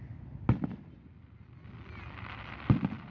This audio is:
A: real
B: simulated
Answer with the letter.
A